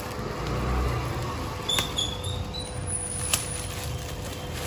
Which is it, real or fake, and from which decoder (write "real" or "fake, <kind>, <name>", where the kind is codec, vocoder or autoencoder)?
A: real